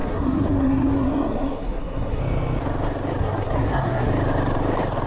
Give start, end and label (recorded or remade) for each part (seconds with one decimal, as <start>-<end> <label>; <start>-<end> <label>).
0.0-2.2 remade; 2.2-3.2 recorded; 3.2-4.1 remade; 4.1-5.1 recorded